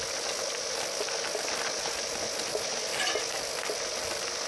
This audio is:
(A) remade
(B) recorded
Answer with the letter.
B